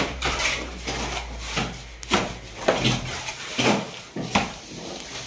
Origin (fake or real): real